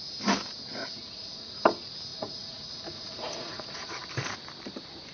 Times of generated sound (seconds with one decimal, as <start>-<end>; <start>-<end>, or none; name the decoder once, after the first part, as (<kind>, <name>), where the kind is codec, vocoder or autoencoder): 0.8-1.5 (vocoder, Vocos); 2.1-4.1